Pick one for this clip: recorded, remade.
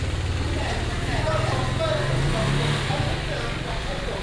recorded